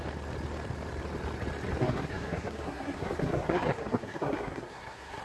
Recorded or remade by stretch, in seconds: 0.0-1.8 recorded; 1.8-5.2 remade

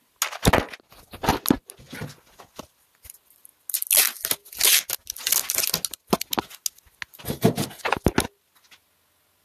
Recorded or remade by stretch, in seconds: 0.0-9.4 recorded

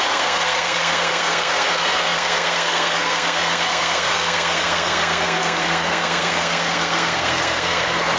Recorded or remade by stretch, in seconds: 0.0-8.2 remade